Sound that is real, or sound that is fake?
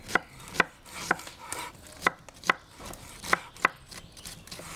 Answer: real